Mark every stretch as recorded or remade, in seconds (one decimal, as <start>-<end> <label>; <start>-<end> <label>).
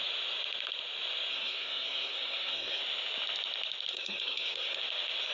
0.0-1.3 recorded; 1.3-2.8 remade; 2.8-3.9 recorded; 3.9-4.8 remade; 4.8-5.3 recorded